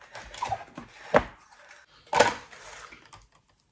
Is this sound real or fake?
real